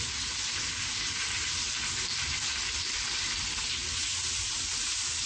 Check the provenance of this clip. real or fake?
real